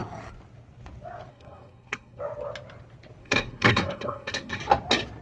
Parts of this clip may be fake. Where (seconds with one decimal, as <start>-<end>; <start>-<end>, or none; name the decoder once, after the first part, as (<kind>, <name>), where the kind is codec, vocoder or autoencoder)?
1.3-2.2 (codec, SNAC); 3.2-4.6